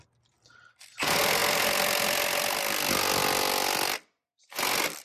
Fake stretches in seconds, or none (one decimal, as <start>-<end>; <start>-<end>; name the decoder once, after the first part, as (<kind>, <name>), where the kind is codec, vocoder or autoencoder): none